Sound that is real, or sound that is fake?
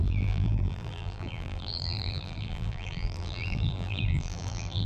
fake